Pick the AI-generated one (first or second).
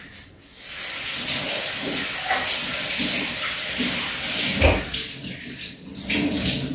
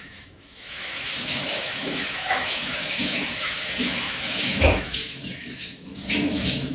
second